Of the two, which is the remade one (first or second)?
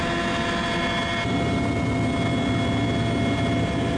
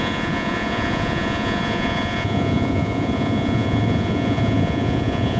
second